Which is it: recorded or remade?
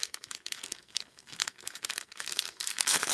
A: remade